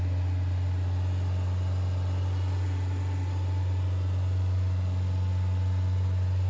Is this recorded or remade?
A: recorded